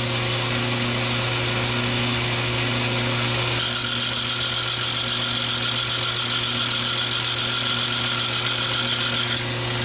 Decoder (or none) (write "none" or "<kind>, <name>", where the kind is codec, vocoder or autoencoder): none